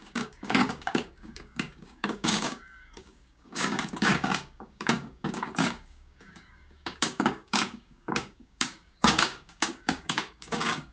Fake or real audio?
fake